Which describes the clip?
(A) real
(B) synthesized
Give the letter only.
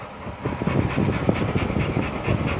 A